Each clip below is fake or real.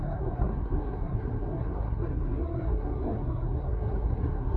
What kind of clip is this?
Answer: fake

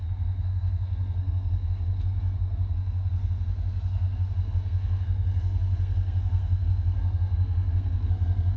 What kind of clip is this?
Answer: fake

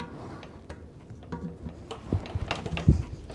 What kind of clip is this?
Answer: real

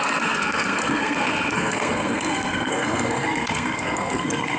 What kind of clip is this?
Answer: fake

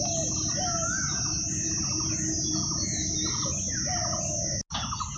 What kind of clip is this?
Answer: real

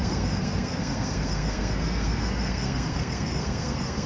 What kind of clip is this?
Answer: fake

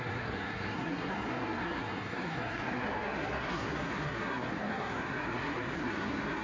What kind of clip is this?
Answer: fake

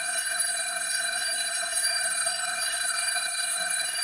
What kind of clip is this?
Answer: fake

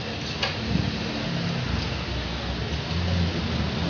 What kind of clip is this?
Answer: real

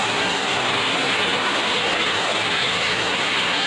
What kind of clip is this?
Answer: fake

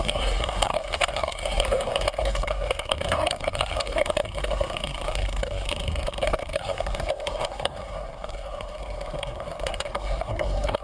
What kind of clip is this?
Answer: fake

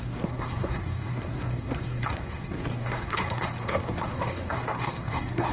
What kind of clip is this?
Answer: fake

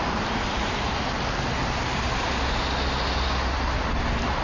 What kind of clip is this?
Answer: real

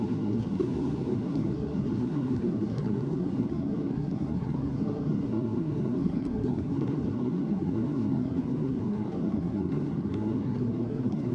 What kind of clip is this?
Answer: fake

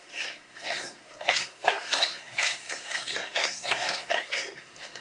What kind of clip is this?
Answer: fake